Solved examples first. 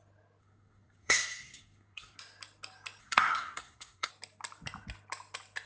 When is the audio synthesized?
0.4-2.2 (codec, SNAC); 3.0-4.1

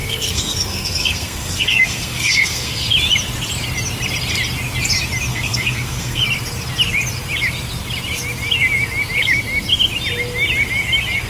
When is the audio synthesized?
0.0-2.9 (codec, SNAC); 5.3-6.2

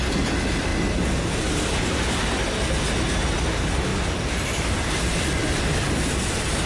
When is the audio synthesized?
none

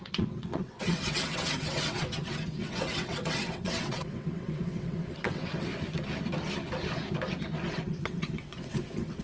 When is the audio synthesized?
0.0-5.7 (vocoder, WaveNeXt); 7.7-9.2